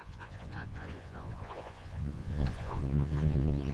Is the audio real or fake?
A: fake